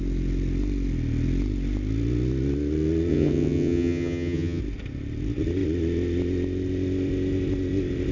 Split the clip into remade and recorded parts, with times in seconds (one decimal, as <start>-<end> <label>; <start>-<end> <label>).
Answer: 0.0-3.1 recorded; 3.1-4.6 remade; 4.6-8.1 recorded